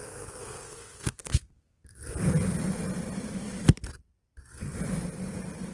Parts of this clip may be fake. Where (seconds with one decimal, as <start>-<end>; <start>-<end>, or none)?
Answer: 0.0-2.0